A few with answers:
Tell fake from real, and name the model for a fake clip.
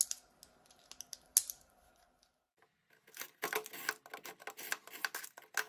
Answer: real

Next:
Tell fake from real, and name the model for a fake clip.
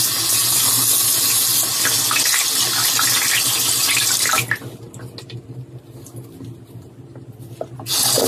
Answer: real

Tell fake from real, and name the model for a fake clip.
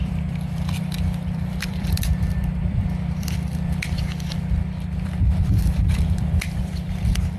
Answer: fake, vocoder, BigVGAN v2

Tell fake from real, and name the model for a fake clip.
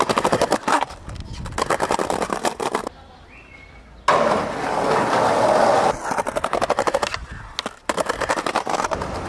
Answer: real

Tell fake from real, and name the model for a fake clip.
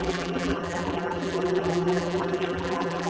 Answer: fake, vocoder, BigVGAN v2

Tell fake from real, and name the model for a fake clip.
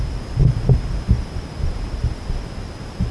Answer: real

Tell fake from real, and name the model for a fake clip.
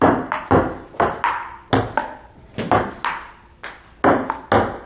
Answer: real